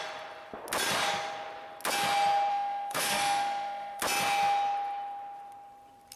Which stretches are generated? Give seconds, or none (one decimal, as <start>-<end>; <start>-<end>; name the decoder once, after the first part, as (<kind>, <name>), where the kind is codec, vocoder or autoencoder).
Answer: 2.5-4.0 (autoencoder, DAC-VAE)

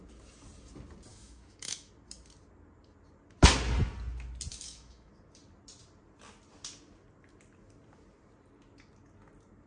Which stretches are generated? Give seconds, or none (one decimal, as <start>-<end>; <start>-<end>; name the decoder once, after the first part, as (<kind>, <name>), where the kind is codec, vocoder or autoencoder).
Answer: 1.1-1.9 (autoencoder, DAC-VAE); 4.5-5.1

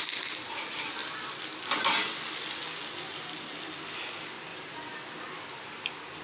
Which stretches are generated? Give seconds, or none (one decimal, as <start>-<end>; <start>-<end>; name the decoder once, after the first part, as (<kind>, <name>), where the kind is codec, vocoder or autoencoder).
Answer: 4.5-5.1 (vocoder, BigVGAN v2)

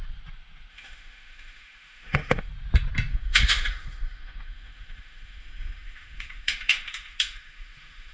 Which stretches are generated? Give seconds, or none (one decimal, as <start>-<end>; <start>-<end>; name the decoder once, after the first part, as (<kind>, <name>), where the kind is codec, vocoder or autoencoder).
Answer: 0.7-2.5 (autoencoder, DAC-VAE); 3.1-8.1

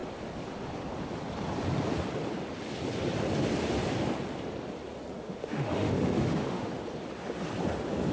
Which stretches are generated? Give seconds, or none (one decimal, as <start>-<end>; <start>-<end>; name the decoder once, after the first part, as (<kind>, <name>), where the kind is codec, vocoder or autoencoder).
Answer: 5.2-6.7 (autoencoder, DAC-VAE)